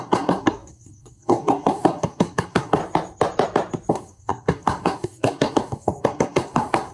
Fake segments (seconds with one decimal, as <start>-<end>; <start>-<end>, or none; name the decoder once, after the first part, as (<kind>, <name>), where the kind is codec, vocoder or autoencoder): 0.0-2.8 (codec, SNAC); 3.9-6.9